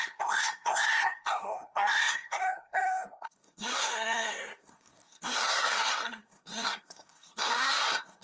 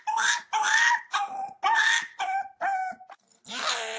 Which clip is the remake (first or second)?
first